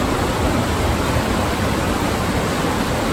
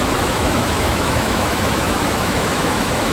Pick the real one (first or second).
first